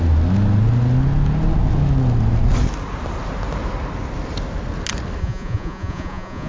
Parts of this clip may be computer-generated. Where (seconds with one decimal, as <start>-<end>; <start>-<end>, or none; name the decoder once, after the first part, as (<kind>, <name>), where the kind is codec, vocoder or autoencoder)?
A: 5.2-6.5 (vocoder, Vocos)